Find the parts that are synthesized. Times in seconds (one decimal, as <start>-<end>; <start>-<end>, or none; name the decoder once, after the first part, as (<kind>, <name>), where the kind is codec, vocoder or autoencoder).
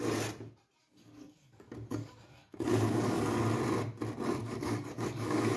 0.8-3.3 (codec, DAC); 4.4-5.6